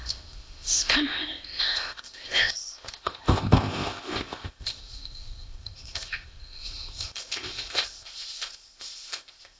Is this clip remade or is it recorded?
remade